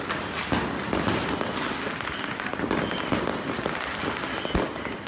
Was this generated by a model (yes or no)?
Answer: no